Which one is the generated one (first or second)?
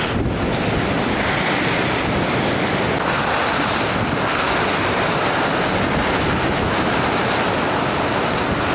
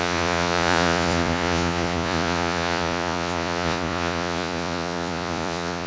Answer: second